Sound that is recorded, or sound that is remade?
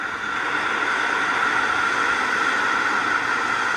recorded